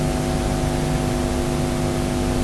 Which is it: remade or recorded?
recorded